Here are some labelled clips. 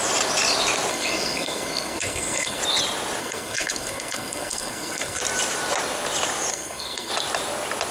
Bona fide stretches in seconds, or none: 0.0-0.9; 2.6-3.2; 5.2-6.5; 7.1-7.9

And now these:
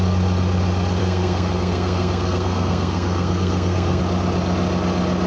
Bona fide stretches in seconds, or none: 0.0-1.0; 4.0-5.3

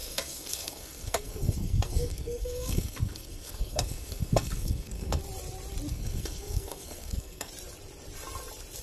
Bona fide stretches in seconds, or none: 5.2-5.9; 7.5-8.8

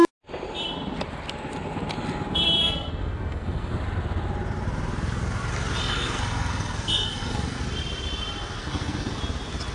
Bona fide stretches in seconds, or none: 0.0-2.6; 3.7-5.8; 7.6-8.6; 9.2-9.7

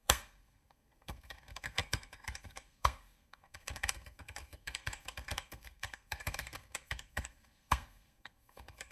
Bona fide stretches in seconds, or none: none

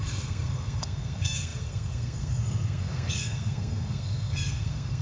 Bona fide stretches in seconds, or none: none